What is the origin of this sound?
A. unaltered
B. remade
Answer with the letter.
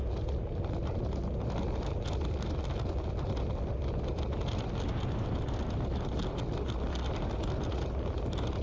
A